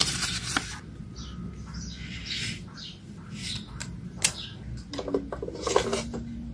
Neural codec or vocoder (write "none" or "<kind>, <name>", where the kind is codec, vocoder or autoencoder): none